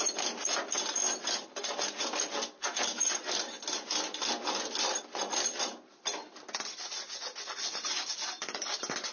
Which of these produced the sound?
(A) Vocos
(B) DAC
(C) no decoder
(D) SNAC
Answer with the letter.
C